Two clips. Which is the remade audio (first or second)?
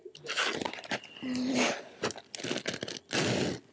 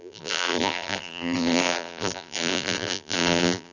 second